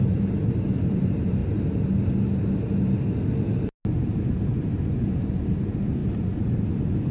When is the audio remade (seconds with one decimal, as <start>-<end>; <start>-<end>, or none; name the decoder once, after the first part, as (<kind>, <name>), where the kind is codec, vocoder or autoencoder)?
0.0-1.4 (vocoder, BigVGAN v2); 4.3-7.1